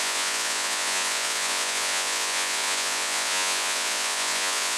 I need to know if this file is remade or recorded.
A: remade